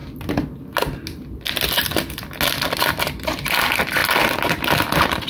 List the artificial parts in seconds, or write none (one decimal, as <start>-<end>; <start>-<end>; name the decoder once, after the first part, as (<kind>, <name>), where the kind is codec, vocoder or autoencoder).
none